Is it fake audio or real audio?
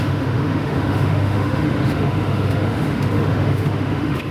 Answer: fake